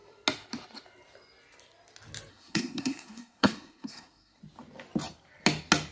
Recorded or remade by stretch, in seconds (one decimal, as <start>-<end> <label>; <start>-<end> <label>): 0.0-2.3 recorded; 2.3-4.4 remade; 4.4-5.9 recorded